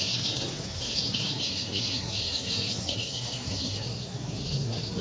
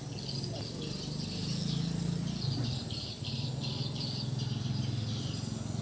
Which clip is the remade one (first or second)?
first